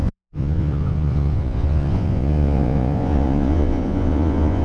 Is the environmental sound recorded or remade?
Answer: remade